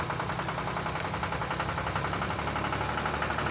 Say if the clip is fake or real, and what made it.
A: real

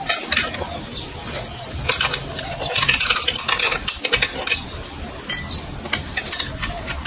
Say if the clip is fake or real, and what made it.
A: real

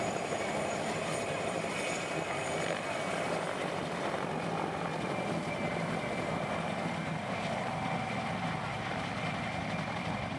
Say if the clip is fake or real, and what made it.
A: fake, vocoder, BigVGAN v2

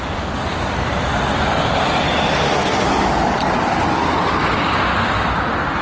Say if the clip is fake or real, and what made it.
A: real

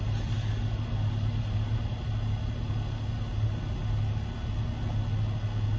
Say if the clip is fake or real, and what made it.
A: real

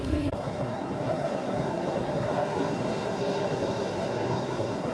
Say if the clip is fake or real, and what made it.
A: fake, codec, SNAC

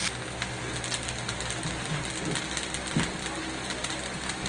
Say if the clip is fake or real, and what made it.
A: real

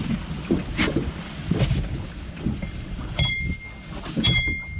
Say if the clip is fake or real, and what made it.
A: real